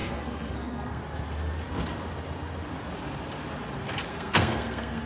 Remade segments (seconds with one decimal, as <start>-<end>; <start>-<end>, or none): 0.0-1.0; 4.1-5.1